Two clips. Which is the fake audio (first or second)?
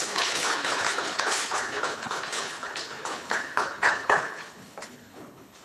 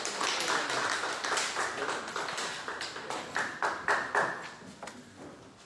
first